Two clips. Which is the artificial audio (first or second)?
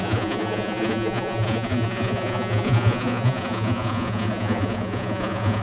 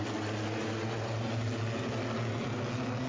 first